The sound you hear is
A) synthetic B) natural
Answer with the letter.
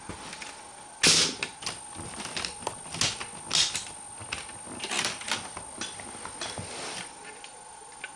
B